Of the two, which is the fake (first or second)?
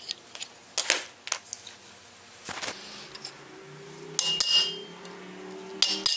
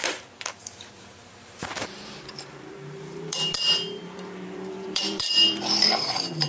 second